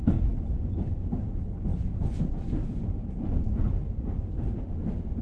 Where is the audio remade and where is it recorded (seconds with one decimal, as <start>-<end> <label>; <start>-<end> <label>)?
0.0-1.7 recorded; 1.7-2.2 remade; 2.2-2.6 recorded; 2.6-4.6 remade; 4.6-5.2 recorded